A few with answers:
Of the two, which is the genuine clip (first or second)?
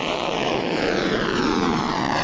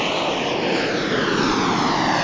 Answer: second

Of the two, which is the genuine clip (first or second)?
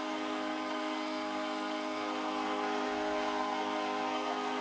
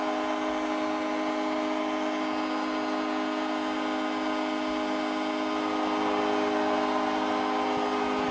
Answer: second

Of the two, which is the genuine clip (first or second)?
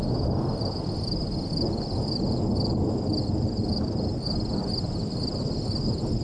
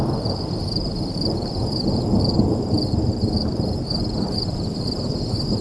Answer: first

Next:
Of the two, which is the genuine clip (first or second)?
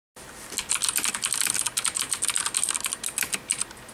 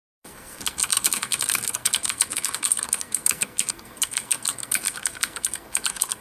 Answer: first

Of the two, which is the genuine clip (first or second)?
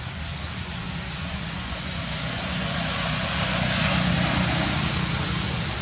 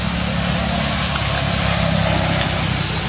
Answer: second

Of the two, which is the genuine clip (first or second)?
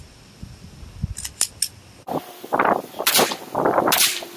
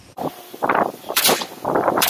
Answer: first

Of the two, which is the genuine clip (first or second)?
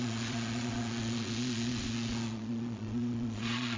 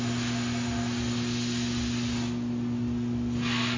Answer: second